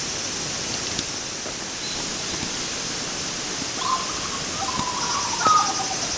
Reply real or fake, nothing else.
real